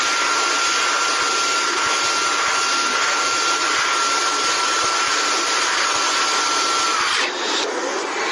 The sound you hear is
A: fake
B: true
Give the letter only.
B